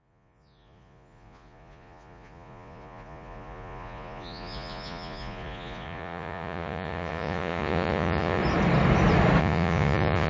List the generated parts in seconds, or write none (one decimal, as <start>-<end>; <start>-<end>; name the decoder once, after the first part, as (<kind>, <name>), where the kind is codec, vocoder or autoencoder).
0.0-8.4 (vocoder, Vocos); 9.4-10.3